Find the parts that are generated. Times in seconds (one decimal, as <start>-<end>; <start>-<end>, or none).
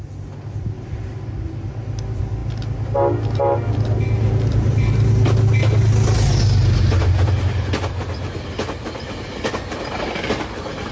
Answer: none